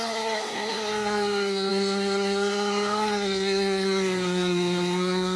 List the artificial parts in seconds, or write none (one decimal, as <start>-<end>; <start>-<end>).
0.0-5.4

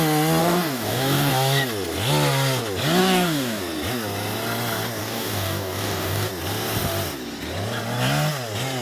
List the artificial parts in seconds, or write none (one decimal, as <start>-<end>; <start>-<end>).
0.4-1.3; 3.0-3.6; 5.0-6.3

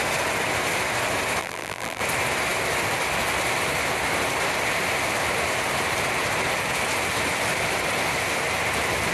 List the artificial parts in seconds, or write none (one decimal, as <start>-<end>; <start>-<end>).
1.4-2.0

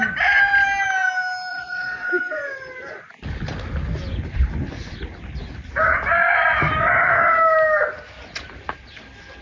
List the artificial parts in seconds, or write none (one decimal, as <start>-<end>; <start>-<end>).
1.5-2.2